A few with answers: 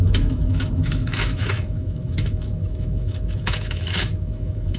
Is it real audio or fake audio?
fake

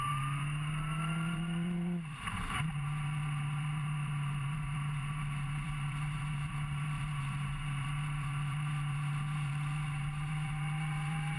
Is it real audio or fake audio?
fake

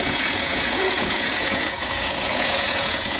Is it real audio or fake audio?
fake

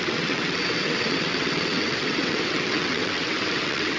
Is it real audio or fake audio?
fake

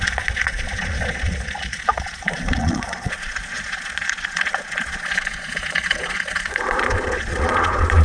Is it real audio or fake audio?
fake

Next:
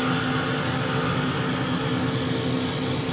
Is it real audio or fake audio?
real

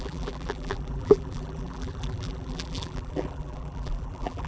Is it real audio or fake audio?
fake